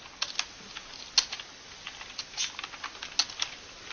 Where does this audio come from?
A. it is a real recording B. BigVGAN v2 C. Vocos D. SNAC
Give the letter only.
A